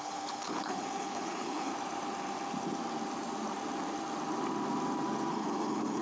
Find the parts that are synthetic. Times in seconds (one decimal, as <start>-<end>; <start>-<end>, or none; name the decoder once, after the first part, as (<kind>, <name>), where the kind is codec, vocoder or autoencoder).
0.0-1.7 (codec, HILCodec); 5.3-6.0